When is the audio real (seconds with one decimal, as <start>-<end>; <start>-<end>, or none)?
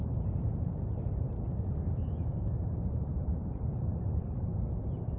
4.5-5.2